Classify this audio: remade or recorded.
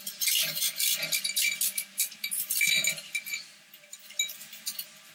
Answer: recorded